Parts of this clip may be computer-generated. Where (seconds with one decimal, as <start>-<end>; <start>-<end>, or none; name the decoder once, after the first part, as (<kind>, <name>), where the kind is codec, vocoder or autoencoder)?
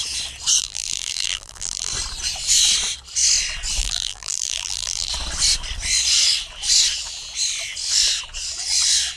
0.6-1.9 (vocoder, BigVGAN v2); 3.8-5.1